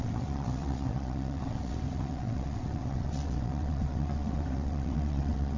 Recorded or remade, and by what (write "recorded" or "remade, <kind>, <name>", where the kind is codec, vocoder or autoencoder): remade, vocoder, WaveNeXt